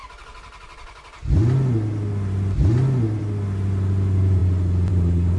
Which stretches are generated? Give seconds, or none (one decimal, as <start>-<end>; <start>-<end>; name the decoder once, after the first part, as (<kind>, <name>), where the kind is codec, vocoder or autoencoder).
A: none